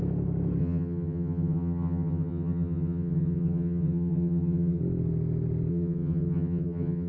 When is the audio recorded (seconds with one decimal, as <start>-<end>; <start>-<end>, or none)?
0.0-0.6; 4.8-5.7